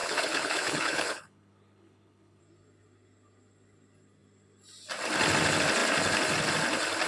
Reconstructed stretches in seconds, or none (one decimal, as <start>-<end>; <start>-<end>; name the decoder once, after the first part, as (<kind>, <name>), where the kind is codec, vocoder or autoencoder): 0.0-2.4 (codec, HILCodec)